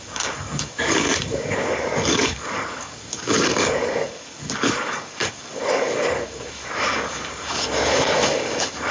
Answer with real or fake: fake